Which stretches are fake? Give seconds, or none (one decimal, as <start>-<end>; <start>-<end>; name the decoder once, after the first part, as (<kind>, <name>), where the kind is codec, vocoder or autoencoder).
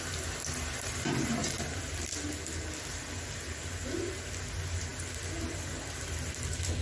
none